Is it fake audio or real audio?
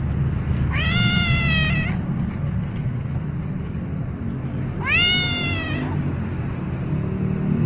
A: real